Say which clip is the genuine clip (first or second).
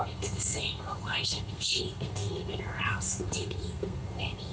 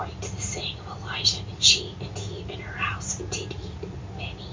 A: second